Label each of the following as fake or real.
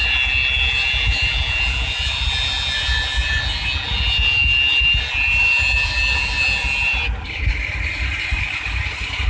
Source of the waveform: real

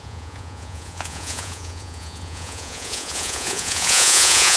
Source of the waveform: fake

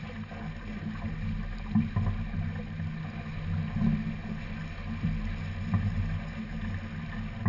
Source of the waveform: real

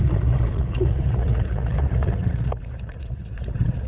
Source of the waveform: fake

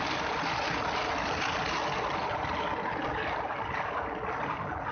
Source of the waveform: real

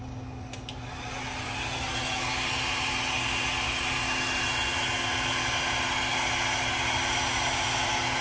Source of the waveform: real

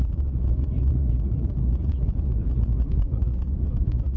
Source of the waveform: fake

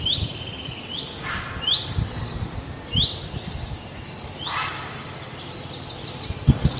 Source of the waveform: real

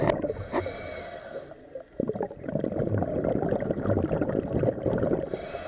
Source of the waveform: real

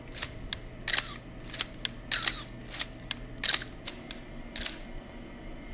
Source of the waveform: real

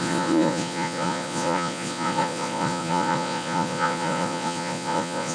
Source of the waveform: fake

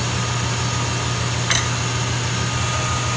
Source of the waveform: real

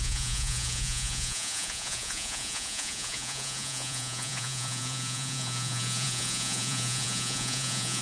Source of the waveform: fake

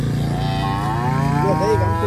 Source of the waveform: real